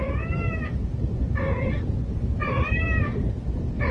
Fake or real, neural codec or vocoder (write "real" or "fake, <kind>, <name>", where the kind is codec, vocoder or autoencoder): fake, vocoder, BigVGAN v2